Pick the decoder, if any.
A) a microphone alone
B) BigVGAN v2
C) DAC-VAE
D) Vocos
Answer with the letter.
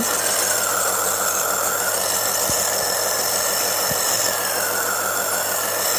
A